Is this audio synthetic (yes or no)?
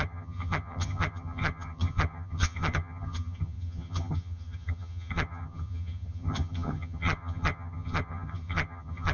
yes